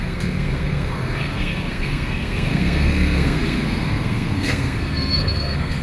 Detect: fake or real fake